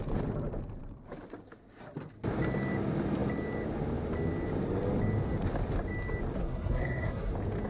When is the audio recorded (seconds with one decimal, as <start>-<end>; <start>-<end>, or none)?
0.0-6.4; 7.3-7.7